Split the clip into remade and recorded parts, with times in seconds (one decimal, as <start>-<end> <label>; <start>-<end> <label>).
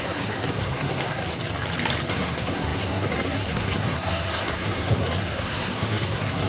0.0-1.2 remade; 1.2-2.1 recorded; 2.1-6.5 remade